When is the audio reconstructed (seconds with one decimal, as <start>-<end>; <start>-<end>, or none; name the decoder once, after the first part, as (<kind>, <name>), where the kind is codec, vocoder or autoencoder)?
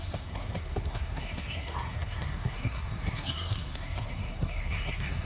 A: 0.0-5.2 (codec, SNAC)